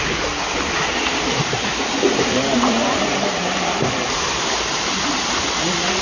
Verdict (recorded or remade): recorded